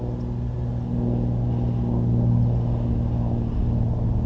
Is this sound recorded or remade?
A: recorded